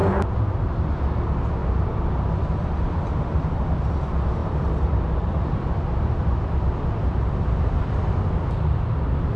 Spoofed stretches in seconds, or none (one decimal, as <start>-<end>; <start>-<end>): 1.6-3.1; 4.4-8.2